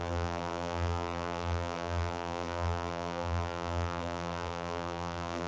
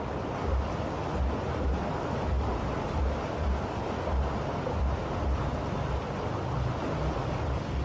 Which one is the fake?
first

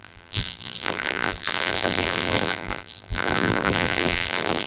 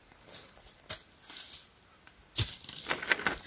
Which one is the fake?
first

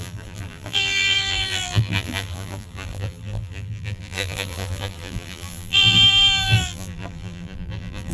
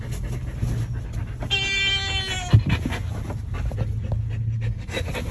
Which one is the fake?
first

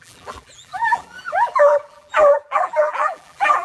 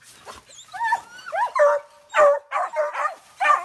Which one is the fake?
first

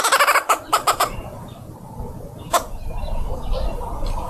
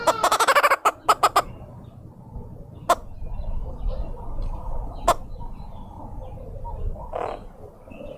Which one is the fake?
first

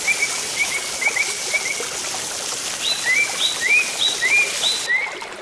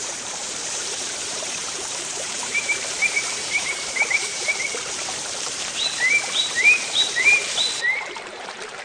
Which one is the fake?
second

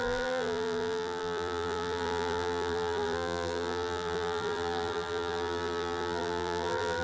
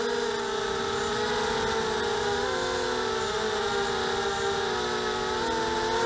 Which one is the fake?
first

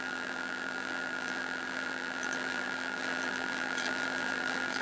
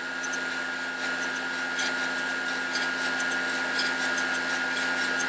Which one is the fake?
first